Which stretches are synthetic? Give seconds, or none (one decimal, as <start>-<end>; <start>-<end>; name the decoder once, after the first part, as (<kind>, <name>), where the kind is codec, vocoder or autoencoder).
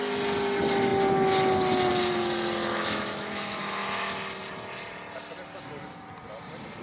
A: 2.7-4.1 (autoencoder, DAC-VAE)